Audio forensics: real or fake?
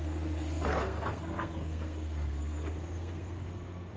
fake